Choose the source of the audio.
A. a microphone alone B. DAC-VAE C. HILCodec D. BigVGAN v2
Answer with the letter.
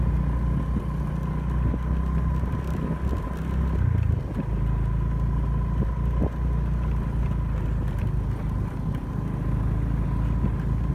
A